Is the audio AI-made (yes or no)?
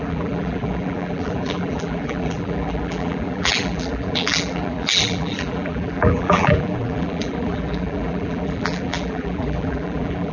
yes